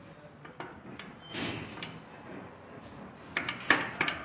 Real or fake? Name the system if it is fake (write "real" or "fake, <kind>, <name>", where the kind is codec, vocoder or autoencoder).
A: real